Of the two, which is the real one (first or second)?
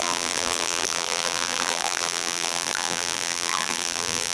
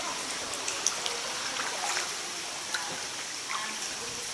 second